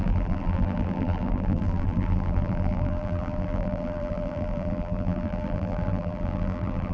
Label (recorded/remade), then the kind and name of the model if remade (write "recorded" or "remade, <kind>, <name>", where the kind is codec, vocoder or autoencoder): remade, vocoder, BigVGAN v2